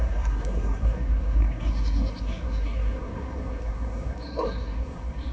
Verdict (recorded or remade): remade